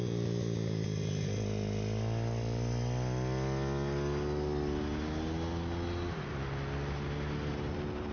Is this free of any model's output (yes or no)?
yes